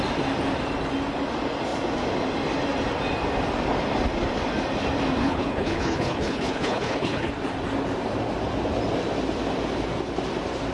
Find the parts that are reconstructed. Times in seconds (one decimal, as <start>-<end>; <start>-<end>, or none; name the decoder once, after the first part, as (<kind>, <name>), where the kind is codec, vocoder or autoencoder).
5.2-7.3 (codec, HILCodec)